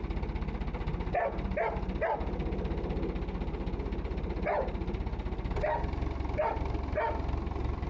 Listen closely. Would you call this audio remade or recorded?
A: recorded